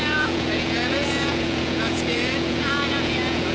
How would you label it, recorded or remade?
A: remade